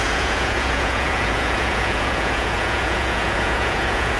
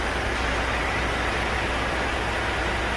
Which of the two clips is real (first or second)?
second